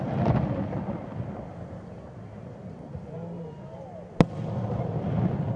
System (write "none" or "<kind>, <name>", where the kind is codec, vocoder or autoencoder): none